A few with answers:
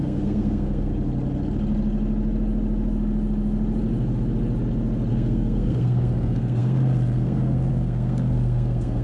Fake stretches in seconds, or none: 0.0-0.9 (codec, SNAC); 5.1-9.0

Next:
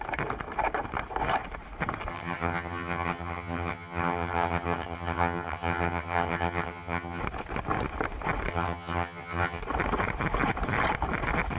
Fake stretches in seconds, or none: 2.1-7.2 (vocoder, HiFi-GAN); 8.5-9.6

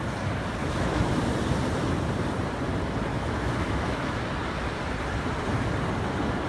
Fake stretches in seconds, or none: 0.6-1.3 (autoencoder, DAC-VAE); 3.1-4.2

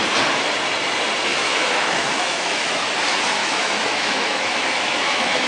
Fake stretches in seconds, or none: 1.3-2.8 (autoencoder, DAC-VAE); 3.4-5.5

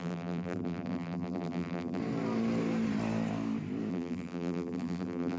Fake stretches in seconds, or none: 0.0-2.0 (vocoder, BigVGAN v2); 3.9-5.4